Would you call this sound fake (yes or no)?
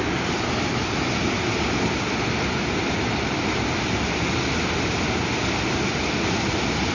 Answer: no